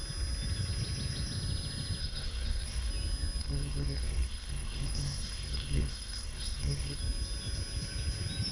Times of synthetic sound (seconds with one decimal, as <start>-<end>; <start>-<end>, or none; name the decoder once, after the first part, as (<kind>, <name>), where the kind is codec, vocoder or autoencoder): 2.0-2.9 (codec, SNAC); 3.4-7.0